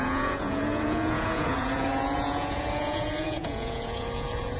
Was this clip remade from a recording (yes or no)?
yes